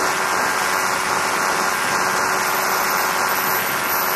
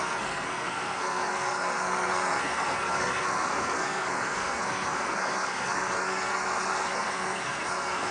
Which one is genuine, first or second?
first